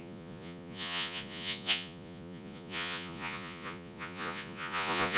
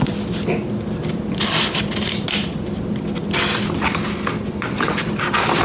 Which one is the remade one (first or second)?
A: first